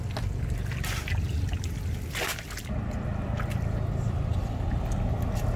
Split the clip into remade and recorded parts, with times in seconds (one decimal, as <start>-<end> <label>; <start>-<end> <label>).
0.0-5.6 recorded